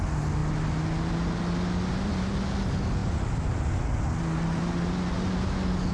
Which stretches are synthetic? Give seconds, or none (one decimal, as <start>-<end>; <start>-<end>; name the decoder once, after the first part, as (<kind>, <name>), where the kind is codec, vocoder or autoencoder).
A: none